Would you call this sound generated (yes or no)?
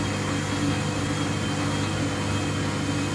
no